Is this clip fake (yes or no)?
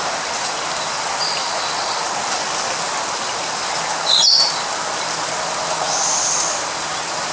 no